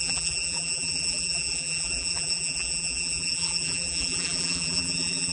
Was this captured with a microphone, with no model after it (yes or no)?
no